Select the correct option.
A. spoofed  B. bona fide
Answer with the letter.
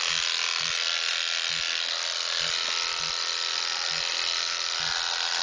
B